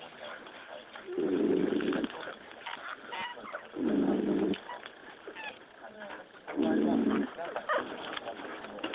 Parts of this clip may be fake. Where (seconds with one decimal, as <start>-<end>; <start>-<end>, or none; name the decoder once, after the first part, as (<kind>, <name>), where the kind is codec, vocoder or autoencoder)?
none